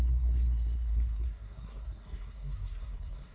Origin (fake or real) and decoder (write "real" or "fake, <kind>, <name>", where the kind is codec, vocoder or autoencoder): fake, codec, SNAC